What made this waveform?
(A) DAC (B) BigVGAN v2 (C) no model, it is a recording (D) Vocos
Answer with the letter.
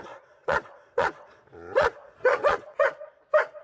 D